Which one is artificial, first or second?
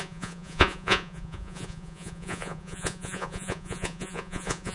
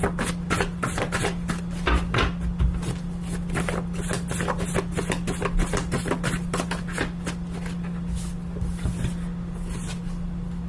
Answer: first